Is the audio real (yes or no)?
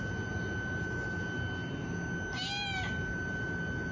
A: yes